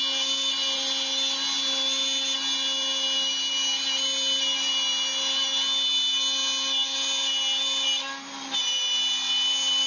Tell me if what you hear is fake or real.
real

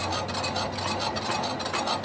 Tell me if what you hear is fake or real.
real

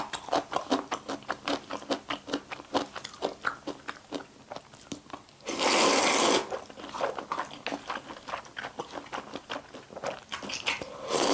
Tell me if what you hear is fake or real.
real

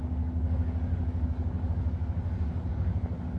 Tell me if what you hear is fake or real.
fake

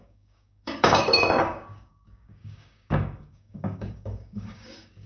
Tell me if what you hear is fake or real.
fake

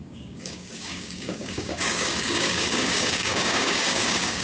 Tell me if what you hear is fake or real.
fake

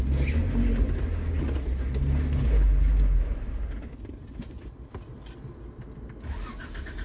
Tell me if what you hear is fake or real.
real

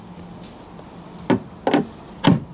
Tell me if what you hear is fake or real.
real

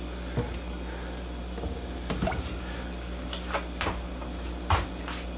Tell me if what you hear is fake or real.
real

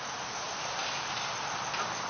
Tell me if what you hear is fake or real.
real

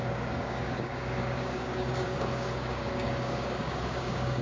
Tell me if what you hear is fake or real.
fake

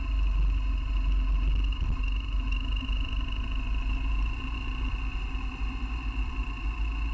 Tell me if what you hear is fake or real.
real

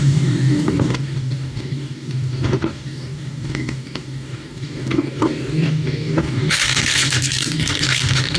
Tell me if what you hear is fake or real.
fake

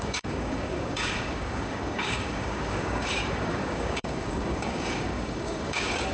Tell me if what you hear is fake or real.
fake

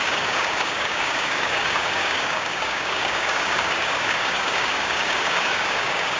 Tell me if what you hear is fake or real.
fake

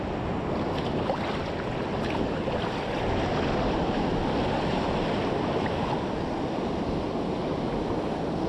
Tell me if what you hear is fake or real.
real